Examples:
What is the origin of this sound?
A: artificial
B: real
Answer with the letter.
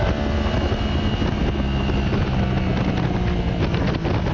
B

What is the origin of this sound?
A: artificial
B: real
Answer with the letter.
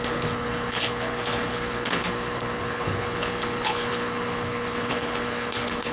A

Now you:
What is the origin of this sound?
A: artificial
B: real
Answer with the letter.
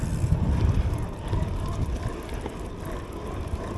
B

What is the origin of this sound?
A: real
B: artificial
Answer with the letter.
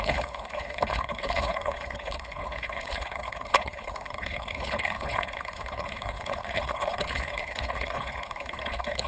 B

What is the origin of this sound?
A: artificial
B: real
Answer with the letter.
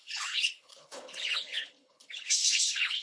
A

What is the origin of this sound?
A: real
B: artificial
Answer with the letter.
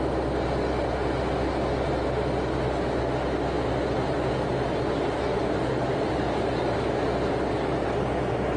A